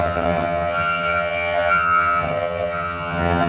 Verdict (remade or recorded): remade